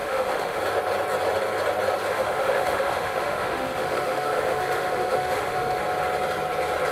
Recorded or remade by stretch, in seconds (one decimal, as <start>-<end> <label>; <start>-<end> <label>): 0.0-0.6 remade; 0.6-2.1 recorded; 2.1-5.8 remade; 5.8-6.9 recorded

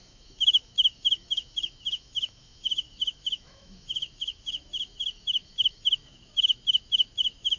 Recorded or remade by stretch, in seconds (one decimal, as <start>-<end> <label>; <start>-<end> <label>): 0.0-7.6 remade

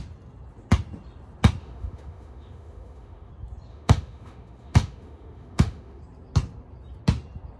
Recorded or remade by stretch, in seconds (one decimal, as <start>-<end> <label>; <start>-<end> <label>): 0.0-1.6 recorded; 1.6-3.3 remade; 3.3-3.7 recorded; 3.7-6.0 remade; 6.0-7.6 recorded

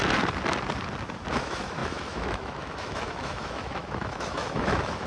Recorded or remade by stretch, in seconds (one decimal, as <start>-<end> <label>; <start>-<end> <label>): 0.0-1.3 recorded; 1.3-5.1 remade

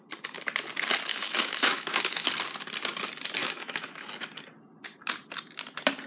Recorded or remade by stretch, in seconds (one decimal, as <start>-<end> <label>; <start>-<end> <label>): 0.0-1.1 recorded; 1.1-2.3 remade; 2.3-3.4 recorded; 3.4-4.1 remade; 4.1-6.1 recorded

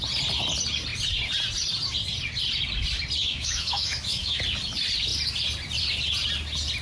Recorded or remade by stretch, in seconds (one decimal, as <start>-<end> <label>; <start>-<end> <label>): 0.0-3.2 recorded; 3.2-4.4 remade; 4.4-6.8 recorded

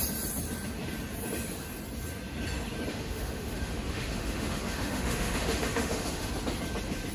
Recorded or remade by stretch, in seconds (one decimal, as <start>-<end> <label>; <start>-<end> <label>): 0.0-2.9 recorded; 2.9-6.3 remade; 6.3-7.1 recorded